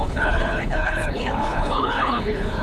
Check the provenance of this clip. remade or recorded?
remade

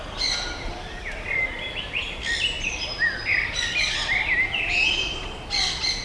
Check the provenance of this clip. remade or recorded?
recorded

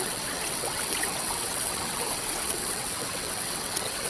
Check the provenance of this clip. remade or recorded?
remade